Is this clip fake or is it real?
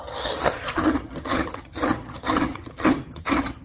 fake